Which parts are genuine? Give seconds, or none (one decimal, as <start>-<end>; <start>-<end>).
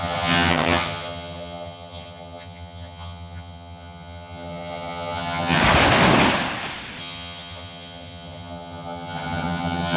5.6-7.0